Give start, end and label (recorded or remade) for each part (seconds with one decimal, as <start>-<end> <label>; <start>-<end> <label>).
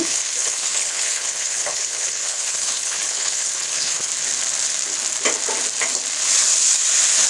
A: 0.0-4.1 remade; 4.1-7.3 recorded